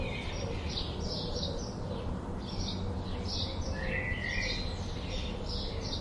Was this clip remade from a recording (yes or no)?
no